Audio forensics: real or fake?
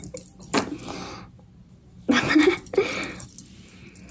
real